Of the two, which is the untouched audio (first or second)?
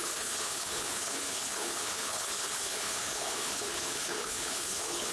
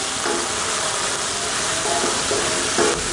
second